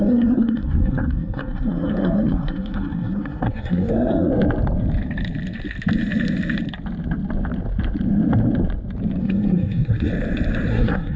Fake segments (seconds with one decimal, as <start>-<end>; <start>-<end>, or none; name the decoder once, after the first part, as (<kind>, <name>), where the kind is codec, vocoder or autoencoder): 0.0-4.3 (codec, SNAC); 9.2-10.1; 10.7-11.2